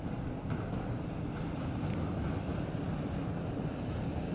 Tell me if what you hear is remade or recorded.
recorded